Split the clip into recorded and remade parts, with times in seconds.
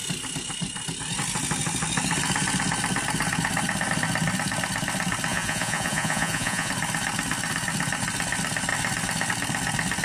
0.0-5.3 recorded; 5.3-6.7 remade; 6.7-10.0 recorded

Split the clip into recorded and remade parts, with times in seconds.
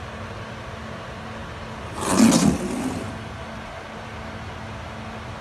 0.0-5.4 recorded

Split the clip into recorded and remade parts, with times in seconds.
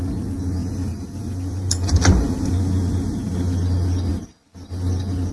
0.0-0.6 recorded; 0.6-2.5 remade; 2.5-5.3 recorded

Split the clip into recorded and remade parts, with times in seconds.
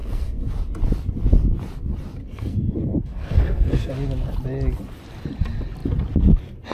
0.0-0.5 remade; 0.5-2.2 recorded; 2.2-3.9 remade; 3.9-6.7 recorded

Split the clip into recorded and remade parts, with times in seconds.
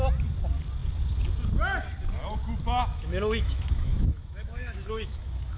0.0-2.9 recorded; 2.9-5.6 remade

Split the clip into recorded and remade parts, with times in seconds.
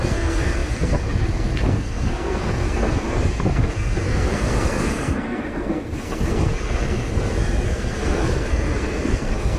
0.0-9.6 remade